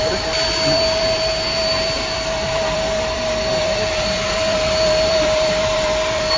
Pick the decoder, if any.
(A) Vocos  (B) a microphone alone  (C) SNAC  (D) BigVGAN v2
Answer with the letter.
D